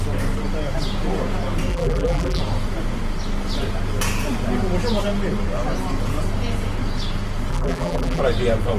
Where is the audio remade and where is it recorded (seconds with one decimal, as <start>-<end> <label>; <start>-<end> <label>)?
0.0-1.7 recorded; 1.7-2.4 remade; 2.4-7.5 recorded; 7.5-8.2 remade; 8.2-8.8 recorded